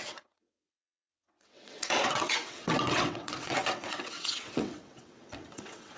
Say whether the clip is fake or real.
fake